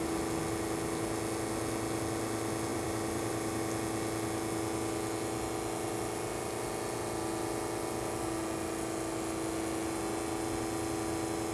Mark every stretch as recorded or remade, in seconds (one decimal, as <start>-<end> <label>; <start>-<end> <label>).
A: 0.0-2.7 recorded; 2.7-3.6 remade; 3.6-11.5 recorded